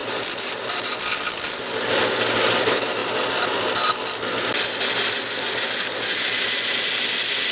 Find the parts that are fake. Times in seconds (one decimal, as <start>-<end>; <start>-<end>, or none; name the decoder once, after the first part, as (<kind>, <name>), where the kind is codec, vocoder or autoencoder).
none